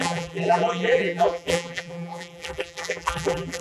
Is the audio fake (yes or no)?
yes